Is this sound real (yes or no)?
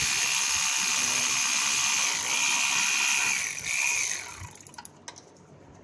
yes